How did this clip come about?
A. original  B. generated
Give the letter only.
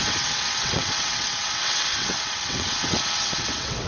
B